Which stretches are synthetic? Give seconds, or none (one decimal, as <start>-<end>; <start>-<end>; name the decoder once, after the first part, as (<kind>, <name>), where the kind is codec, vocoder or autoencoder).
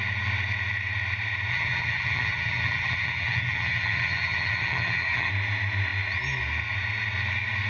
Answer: 1.5-5.3 (vocoder, HiFi-GAN)